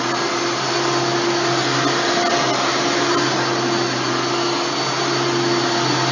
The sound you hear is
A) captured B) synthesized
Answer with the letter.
A